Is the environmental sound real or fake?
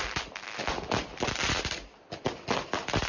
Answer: real